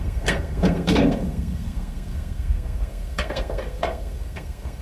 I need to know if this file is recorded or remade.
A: remade